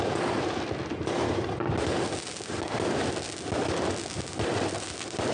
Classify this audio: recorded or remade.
recorded